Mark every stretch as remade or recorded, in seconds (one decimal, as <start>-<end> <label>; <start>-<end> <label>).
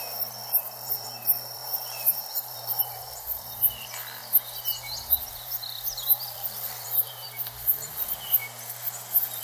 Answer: 0.0-4.2 remade; 4.2-5.3 recorded; 5.3-8.4 remade; 8.4-9.4 recorded